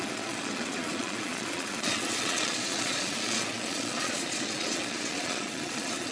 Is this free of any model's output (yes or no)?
no